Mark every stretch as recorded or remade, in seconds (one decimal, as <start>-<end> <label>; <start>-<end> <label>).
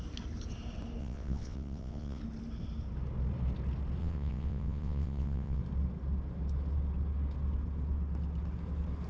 0.0-1.0 recorded; 1.0-2.2 remade; 2.2-4.0 recorded; 4.0-5.6 remade; 5.6-9.1 recorded